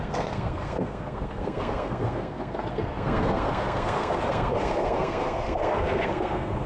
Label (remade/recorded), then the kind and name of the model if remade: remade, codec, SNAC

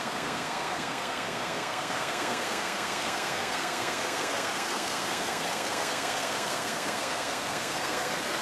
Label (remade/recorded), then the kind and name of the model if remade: remade, codec, SNAC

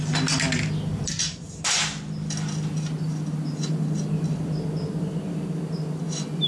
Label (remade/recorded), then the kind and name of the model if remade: recorded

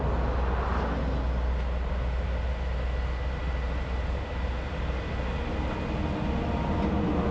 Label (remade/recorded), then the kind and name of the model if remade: recorded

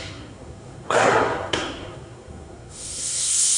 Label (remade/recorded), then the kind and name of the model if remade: remade, codec, SNAC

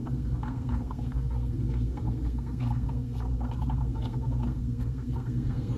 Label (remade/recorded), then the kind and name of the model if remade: remade, codec, SNAC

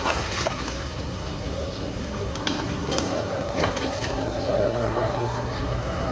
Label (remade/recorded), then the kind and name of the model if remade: remade, codec, SNAC